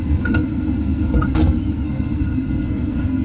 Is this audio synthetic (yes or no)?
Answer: yes